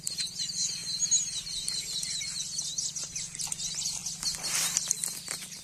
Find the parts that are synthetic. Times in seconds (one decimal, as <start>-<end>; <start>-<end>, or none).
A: none